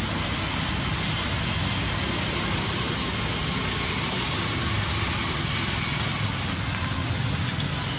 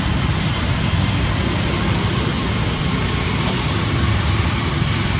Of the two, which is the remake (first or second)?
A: second